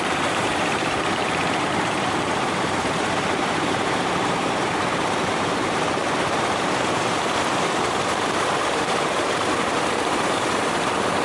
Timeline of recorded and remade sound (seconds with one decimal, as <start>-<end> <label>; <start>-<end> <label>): 0.0-11.2 remade